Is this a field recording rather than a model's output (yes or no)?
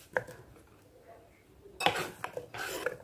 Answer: yes